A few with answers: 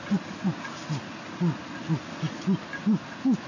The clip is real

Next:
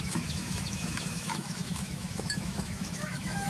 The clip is fake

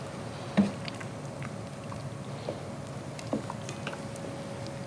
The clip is real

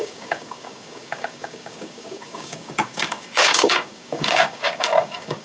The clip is fake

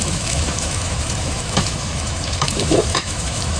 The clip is fake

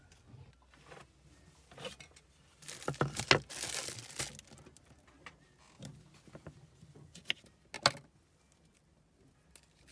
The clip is real